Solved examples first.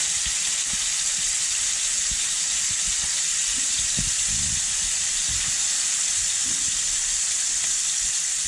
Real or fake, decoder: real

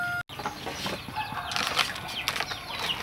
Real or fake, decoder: real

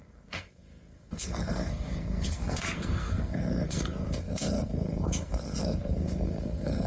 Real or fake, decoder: fake, codec, SNAC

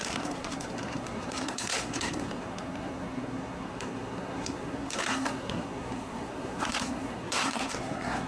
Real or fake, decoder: fake, codec, SNAC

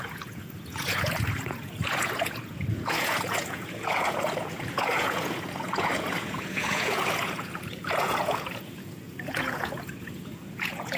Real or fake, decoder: fake, vocoder, Vocos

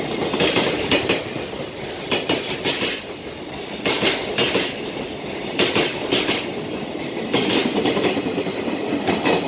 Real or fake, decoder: real